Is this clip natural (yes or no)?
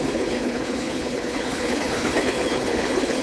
no